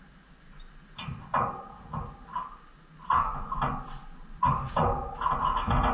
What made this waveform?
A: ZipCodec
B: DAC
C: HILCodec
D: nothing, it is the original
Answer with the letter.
D